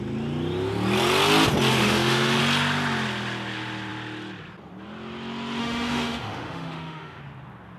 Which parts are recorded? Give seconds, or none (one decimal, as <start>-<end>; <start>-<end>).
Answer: 0.0-1.7; 2.4-5.6; 7.2-7.8